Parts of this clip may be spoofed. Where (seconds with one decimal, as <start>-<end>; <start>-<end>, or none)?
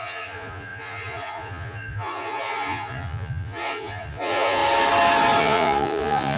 0.0-4.6; 5.4-6.4